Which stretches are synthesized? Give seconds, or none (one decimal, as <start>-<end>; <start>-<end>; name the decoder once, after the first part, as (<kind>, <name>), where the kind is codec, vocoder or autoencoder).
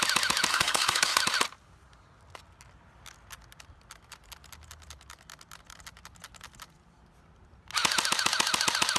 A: 0.5-1.2 (codec, SNAC)